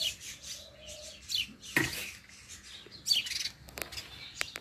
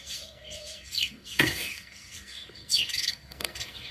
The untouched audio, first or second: first